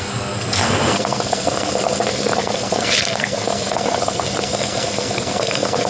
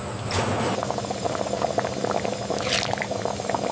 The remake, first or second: first